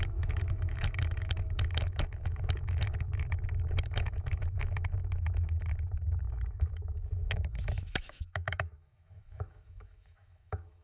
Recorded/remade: remade